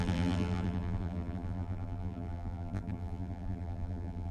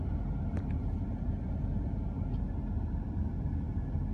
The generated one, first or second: first